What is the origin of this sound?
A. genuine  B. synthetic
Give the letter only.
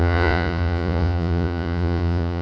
B